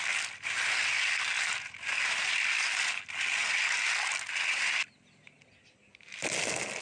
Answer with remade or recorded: recorded